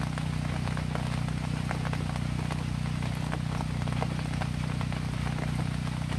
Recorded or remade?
recorded